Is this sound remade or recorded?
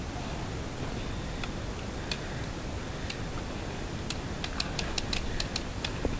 recorded